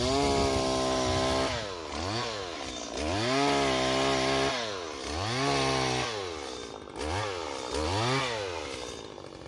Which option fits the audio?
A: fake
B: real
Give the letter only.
B